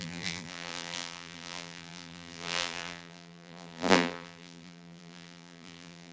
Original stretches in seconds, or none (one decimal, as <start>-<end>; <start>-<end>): none